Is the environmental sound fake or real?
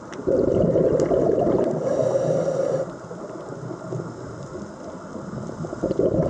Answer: real